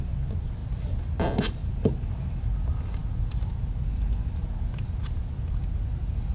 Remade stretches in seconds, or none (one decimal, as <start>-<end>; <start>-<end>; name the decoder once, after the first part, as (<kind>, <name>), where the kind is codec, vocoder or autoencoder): none